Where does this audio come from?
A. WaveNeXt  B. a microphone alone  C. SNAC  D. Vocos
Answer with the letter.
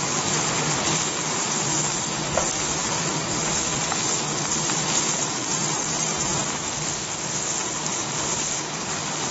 B